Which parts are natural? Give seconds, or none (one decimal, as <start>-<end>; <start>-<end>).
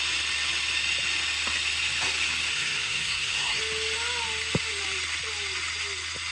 0.0-2.5; 3.6-6.3